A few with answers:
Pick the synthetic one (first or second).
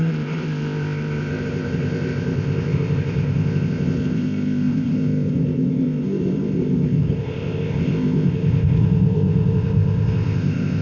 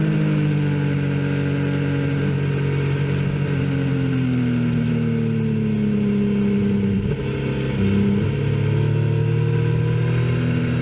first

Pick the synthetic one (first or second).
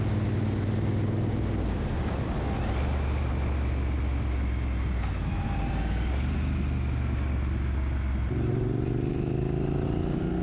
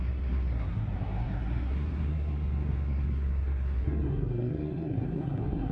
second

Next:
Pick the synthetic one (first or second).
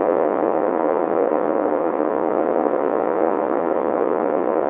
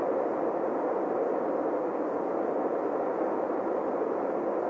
first